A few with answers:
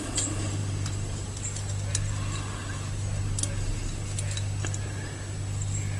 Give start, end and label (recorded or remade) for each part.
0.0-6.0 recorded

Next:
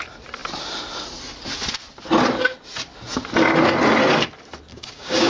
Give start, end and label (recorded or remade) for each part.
0.0-4.7 recorded; 4.7-5.3 remade